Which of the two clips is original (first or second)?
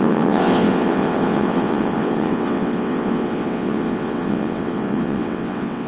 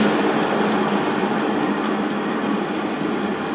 second